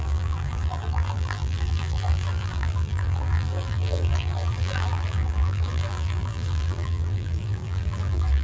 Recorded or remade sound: remade